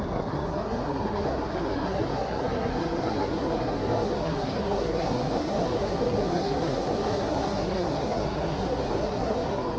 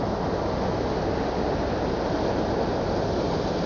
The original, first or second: second